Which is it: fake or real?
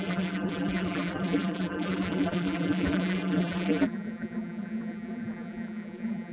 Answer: fake